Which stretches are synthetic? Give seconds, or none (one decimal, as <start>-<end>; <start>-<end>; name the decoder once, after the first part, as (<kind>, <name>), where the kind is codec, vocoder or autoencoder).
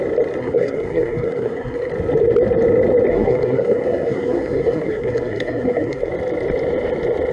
0.4-1.9 (codec, SNAC); 3.1-6.1